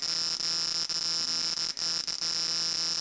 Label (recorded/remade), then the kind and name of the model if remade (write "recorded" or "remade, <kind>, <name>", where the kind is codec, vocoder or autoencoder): recorded